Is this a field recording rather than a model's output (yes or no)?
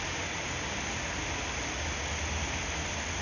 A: yes